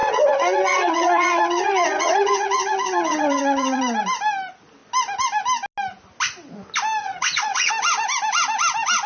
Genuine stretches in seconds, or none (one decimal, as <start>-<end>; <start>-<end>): 3.8-7.0; 7.7-9.1